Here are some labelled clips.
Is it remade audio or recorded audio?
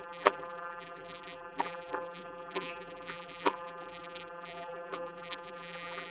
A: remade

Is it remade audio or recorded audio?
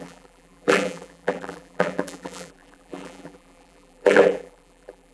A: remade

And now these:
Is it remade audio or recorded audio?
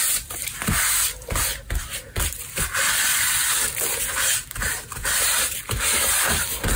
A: remade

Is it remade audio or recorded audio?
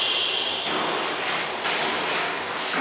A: recorded